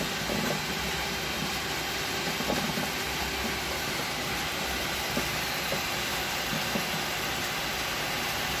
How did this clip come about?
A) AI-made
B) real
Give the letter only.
B